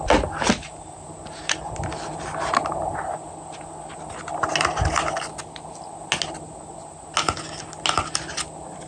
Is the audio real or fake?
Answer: real